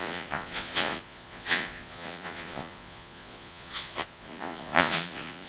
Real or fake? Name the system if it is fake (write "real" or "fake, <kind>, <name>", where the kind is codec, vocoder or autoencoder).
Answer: fake, vocoder, Vocos